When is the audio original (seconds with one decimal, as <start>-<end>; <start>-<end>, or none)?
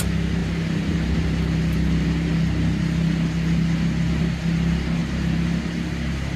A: 0.0-6.4